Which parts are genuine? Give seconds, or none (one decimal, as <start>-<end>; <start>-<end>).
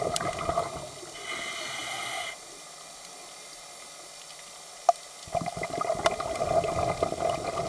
0.0-7.7